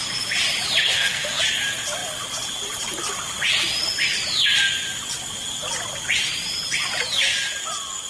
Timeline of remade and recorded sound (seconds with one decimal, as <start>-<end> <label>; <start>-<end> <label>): 0.0-0.8 recorded; 0.8-1.4 remade; 1.4-8.1 recorded

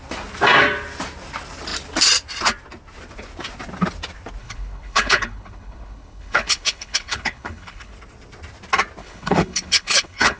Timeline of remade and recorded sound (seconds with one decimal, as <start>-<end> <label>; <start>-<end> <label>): 0.0-4.4 recorded; 4.4-7.9 remade; 7.9-9.0 recorded; 9.0-10.4 remade